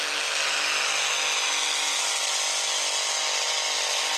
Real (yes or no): yes